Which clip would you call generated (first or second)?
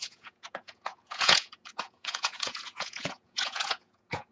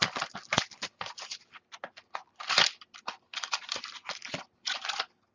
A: first